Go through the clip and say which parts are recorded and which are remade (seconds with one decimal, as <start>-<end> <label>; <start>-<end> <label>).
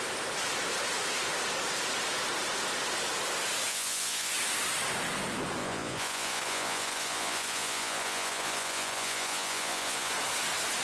0.0-3.7 recorded; 3.7-4.3 remade; 4.3-5.6 recorded; 5.6-10.1 remade; 10.1-10.8 recorded